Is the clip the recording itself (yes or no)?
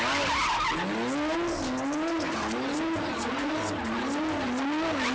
yes